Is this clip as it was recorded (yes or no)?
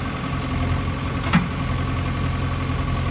yes